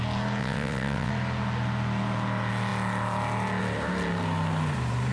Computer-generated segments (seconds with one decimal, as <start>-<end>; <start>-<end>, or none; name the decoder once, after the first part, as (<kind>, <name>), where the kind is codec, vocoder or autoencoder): 0.4-1.1 (vocoder, WaveNeXt)

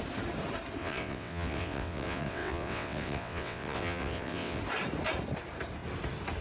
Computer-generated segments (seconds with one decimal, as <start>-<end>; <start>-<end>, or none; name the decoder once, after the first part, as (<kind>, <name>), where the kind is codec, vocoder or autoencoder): 0.8-4.6 (vocoder, WaveNeXt)